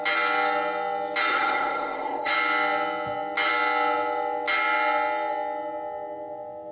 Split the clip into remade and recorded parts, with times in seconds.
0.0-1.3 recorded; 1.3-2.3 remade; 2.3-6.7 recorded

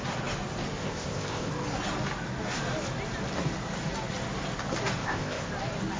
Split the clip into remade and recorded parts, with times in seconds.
0.0-0.8 recorded; 0.8-1.5 remade; 1.5-5.0 recorded; 5.0-5.5 remade; 5.5-6.0 recorded

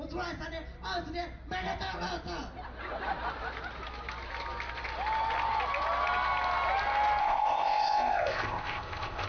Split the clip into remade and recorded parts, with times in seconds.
0.0-7.2 recorded; 7.2-9.3 remade

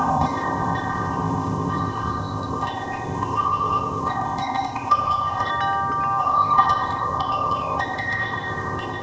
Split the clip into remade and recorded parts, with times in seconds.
0.0-5.5 remade; 5.5-6.2 recorded; 6.2-9.0 remade

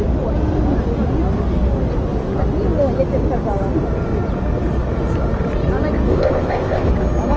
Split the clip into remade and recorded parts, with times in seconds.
0.0-6.1 recorded; 6.1-6.9 remade; 6.9-7.4 recorded